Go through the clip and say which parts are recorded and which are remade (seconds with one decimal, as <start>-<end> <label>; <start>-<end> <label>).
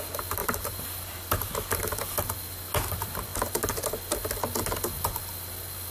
0.0-0.4 recorded; 0.4-1.5 remade; 1.5-5.9 recorded